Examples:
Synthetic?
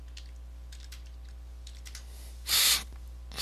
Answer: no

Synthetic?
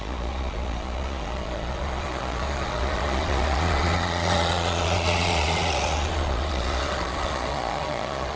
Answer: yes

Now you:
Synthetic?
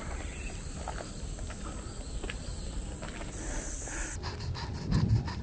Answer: no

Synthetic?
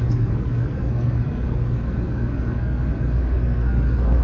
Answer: yes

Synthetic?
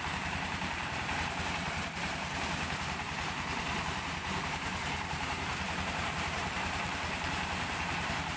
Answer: yes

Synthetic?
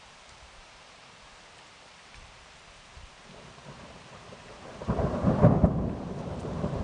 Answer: yes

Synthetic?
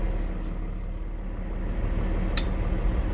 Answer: no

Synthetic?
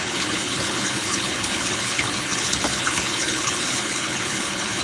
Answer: yes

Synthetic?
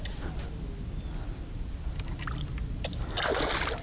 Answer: no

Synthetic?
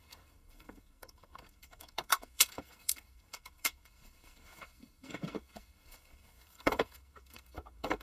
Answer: yes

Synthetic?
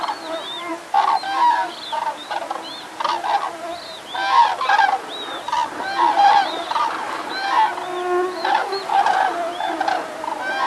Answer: no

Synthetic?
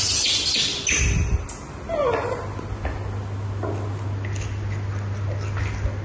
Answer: no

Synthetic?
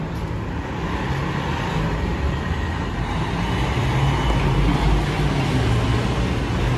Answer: no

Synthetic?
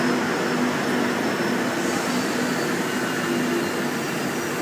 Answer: no